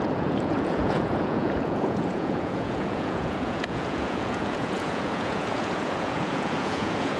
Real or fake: fake